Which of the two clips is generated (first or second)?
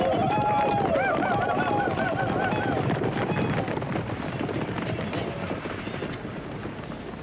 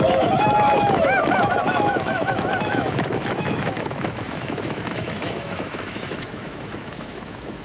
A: second